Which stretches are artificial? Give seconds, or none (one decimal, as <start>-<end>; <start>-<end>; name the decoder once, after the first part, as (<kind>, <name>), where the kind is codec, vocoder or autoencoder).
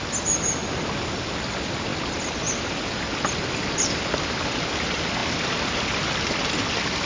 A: none